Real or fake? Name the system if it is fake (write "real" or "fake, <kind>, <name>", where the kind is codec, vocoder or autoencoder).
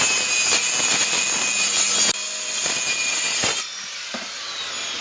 real